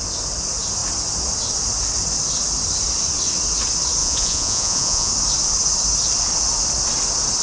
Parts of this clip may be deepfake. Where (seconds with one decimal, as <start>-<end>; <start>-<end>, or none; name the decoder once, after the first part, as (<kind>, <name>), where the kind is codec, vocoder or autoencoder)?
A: 4.0-5.1 (vocoder, Vocos)